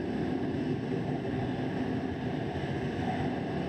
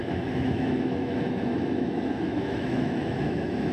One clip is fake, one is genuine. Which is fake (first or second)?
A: second